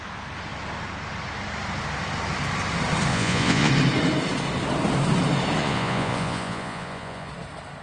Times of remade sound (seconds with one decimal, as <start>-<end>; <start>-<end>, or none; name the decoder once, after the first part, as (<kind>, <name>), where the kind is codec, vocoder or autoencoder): 3.1-3.7 (vocoder, Vocos); 5.6-7.3